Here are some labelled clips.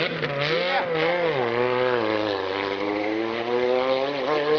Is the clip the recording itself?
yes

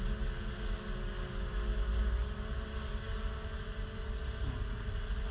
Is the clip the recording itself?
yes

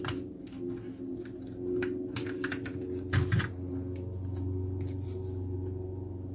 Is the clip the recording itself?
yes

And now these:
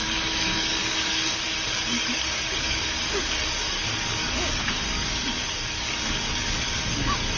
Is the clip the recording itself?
no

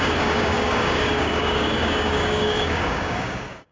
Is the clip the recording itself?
no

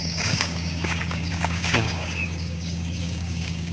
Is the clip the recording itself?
no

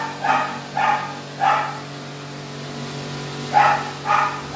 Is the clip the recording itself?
yes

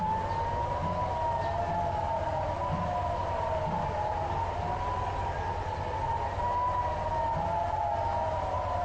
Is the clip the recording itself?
yes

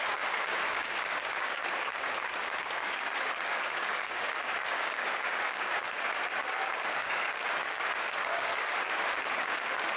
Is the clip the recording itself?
no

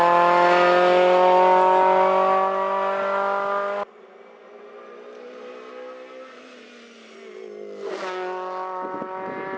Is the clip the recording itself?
yes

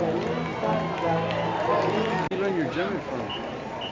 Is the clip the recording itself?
yes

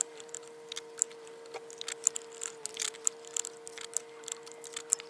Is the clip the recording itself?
yes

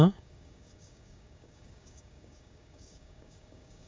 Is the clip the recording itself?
no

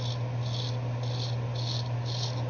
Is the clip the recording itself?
yes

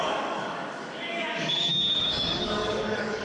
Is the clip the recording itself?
no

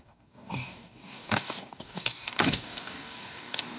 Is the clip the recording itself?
no